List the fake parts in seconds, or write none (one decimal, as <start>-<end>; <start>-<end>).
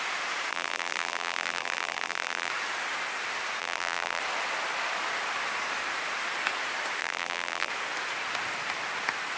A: 0.5-2.5; 3.6-4.2; 7.0-7.7